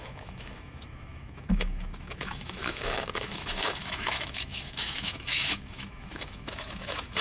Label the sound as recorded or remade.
remade